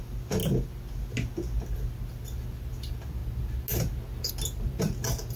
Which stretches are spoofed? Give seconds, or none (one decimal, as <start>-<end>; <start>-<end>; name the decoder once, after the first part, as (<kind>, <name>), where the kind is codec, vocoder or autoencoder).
none